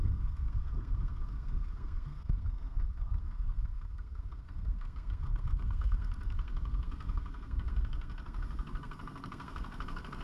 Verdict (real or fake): fake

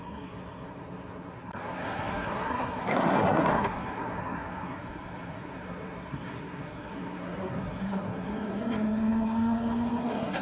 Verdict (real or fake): fake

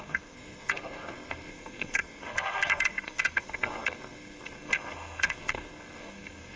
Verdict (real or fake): fake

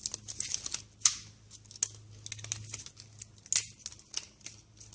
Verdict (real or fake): real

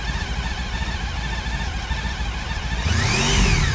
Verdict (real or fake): real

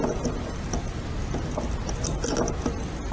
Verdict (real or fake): real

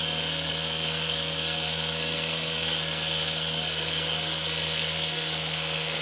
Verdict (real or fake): fake